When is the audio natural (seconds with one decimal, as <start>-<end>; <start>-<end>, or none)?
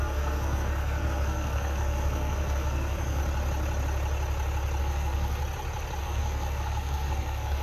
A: 3.2-4.8; 5.4-6.0